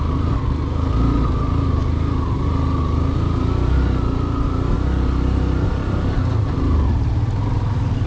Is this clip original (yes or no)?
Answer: yes